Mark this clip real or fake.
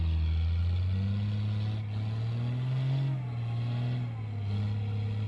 real